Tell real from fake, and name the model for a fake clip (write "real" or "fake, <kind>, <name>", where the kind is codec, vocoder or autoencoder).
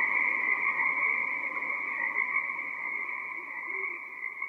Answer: real